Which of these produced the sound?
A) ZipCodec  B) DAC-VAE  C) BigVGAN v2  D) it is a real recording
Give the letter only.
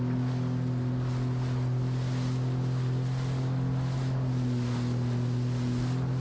D